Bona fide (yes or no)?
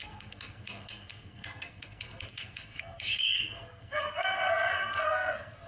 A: no